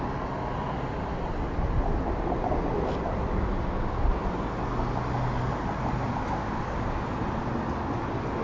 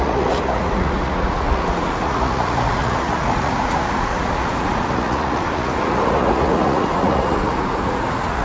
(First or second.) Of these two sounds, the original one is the first